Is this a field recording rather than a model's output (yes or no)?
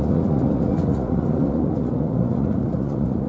no